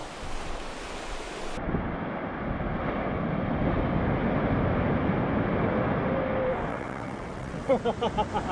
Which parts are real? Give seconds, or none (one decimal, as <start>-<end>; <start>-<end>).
0.0-6.7; 7.8-8.5

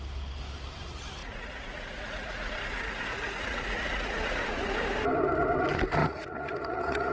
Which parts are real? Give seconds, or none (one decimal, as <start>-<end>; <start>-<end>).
0.0-1.2; 4.6-6.0

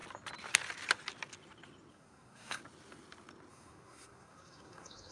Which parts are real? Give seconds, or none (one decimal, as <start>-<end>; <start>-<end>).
0.0-1.9; 2.6-3.5